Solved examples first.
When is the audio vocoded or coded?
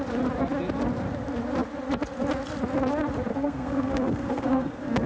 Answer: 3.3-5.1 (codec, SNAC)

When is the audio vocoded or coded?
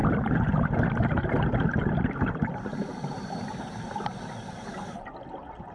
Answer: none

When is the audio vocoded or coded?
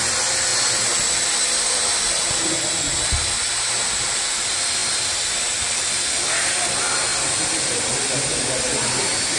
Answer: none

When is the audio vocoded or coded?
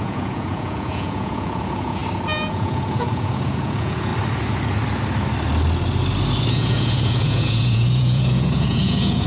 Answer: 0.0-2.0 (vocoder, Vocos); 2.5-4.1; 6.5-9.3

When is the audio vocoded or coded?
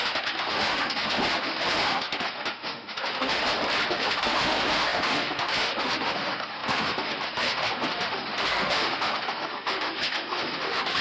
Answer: 0.0-3.4 (autoencoder, DAC-VAE); 3.9-11.0